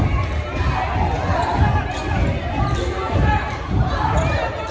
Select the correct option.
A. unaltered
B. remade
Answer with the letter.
A